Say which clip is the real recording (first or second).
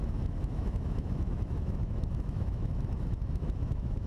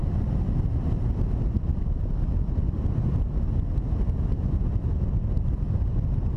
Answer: second